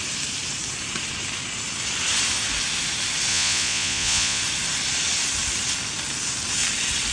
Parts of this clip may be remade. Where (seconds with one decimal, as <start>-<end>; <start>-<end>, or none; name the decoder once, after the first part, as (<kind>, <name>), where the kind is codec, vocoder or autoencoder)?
3.3-4.4 (vocoder, Vocos)